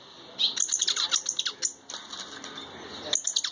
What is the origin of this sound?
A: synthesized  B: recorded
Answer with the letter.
B